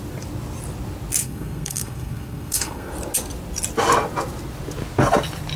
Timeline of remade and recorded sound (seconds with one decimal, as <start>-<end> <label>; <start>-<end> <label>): 0.0-1.2 recorded; 1.2-2.9 remade; 2.9-5.6 recorded